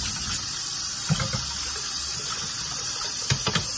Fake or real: fake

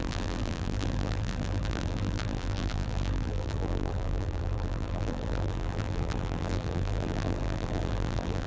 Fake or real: fake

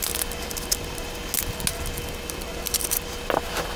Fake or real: real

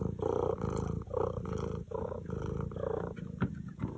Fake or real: real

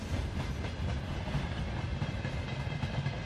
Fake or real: real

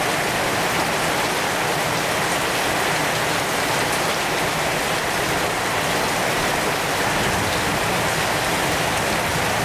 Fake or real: real